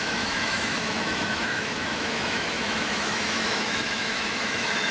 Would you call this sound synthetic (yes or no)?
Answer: yes